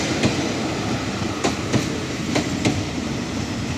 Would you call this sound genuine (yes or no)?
yes